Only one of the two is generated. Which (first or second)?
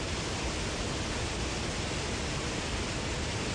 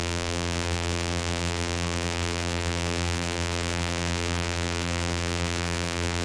second